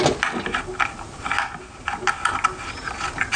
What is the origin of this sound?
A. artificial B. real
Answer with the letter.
B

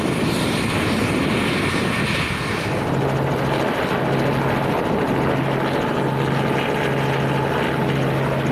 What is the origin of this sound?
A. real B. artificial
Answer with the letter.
A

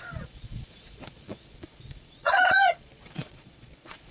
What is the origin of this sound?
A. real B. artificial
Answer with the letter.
B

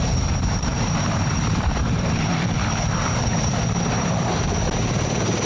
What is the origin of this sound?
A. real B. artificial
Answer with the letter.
B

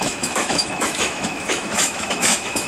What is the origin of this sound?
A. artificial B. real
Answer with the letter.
A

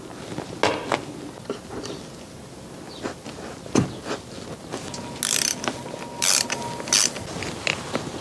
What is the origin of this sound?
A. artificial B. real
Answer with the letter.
B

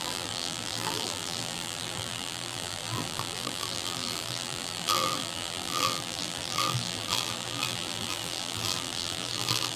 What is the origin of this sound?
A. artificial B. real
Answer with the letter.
A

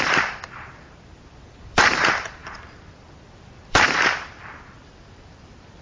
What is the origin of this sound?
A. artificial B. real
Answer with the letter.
A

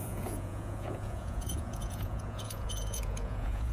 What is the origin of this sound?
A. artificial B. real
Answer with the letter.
A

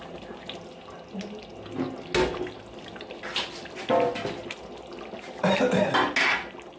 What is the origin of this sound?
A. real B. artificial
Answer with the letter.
A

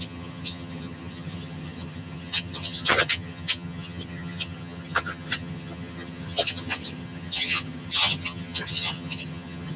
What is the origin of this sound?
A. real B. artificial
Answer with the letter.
B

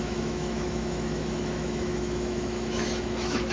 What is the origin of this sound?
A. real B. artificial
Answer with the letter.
B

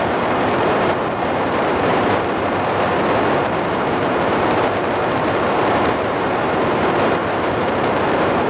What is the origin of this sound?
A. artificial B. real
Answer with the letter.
A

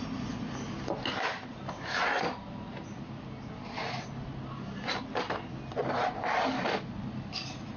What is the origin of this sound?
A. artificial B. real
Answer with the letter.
B